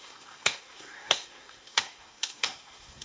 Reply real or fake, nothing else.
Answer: fake